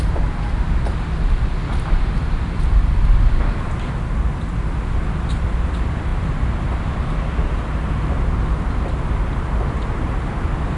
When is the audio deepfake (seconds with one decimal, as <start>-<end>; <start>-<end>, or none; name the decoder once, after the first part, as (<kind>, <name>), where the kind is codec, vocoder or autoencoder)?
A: none